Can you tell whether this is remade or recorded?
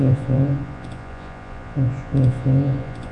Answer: remade